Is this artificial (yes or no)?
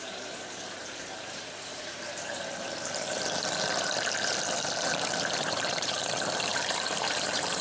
yes